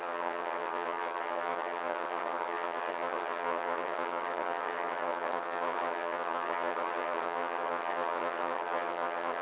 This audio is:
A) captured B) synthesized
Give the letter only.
B